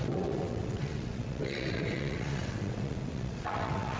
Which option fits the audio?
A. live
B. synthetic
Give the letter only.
B